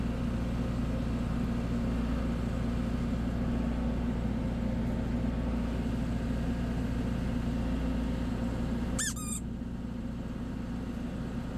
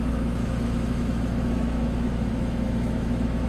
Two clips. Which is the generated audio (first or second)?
second